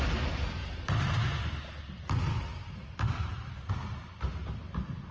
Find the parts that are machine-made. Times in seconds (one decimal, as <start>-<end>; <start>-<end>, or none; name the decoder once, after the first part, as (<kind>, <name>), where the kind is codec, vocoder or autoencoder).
none